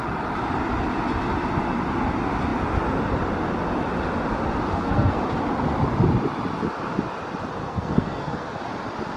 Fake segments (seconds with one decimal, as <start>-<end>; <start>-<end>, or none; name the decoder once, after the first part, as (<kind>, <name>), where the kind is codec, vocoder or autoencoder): 4.7-5.2 (codec, SNAC); 7.6-8.6